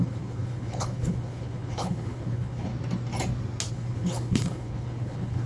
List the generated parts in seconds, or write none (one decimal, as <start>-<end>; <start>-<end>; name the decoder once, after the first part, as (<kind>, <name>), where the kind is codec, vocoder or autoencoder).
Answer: 0.0-2.7 (codec, HILCodec); 3.7-5.5